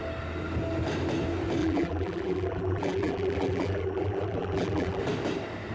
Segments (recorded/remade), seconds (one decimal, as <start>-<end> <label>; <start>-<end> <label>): 0.0-1.6 recorded; 1.6-5.0 remade; 5.0-5.7 recorded